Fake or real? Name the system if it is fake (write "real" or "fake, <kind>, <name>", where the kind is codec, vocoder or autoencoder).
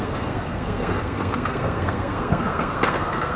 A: fake, codec, SNAC